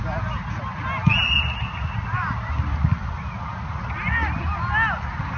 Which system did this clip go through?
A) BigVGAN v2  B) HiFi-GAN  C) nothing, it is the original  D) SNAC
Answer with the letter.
C